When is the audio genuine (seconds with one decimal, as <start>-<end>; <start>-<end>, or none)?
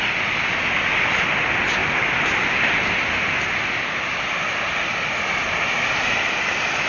0.0-6.9